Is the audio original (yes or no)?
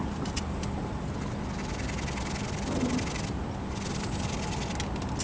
yes